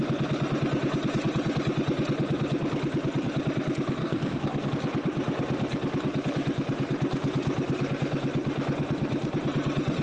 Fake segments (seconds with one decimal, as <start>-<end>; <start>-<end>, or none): 4.0-4.7